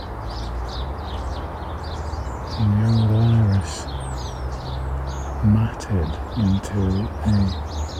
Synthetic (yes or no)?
no